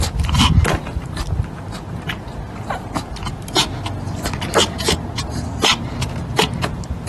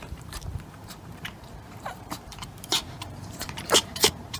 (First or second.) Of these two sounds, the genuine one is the first